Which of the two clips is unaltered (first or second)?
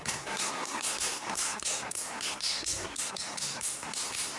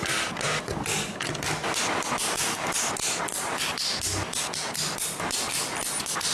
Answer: second